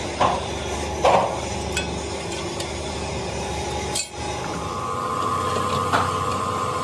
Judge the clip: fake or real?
real